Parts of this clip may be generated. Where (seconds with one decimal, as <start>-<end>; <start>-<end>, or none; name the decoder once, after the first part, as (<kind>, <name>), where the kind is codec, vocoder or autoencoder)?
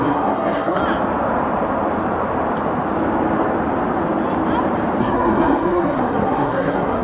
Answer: 0.0-0.8 (codec, SNAC); 5.0-7.0